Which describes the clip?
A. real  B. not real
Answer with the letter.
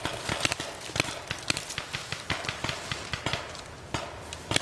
A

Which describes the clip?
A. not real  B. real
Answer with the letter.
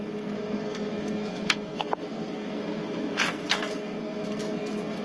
A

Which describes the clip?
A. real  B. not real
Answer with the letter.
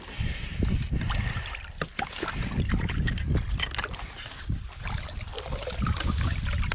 A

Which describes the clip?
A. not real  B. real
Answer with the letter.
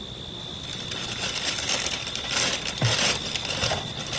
B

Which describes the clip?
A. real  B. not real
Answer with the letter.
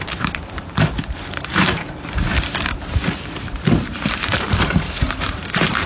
B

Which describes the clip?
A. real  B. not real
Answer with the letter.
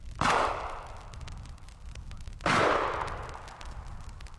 A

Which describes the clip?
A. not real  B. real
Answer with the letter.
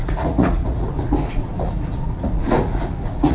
A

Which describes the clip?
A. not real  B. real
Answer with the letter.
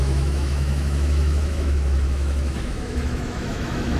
A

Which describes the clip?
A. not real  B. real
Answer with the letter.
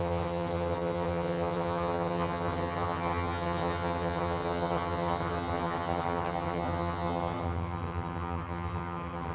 A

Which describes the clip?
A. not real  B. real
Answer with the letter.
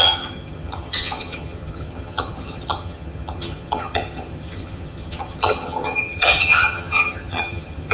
A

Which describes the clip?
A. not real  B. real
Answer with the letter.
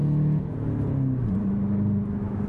B